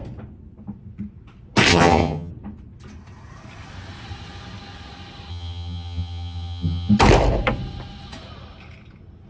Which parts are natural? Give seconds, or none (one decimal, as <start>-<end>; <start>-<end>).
0.0-1.7; 2.3-5.3; 6.9-9.3